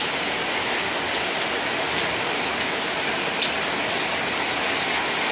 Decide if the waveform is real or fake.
real